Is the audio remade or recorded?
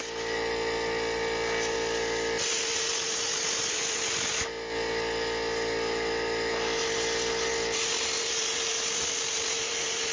recorded